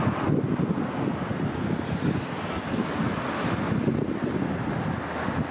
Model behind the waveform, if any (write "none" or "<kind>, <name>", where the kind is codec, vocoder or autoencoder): none